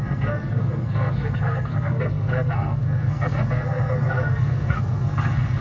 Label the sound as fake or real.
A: fake